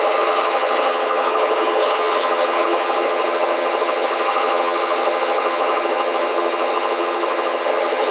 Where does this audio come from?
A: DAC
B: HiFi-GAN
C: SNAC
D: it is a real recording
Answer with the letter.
B